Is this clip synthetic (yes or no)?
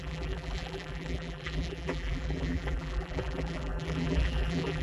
yes